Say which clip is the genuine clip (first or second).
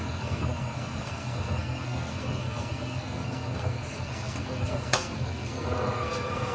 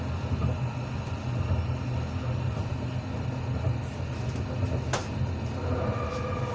second